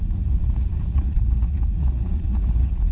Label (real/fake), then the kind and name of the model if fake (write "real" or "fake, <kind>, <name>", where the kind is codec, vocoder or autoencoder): fake, vocoder, Vocos